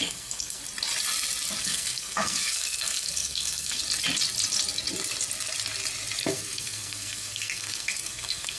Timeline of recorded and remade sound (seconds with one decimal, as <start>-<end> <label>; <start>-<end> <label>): 0.0-0.6 remade; 0.6-1.6 recorded; 1.6-3.8 remade; 3.8-6.2 recorded; 6.2-8.6 remade